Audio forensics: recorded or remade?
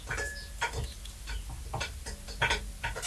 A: recorded